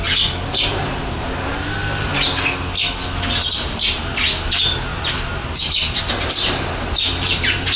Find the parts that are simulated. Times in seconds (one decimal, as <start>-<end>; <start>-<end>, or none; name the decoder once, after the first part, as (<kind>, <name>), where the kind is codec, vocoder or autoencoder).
0.8-2.1 (vocoder, BigVGAN v2); 3.5-7.8